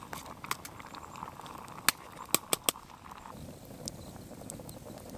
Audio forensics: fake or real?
real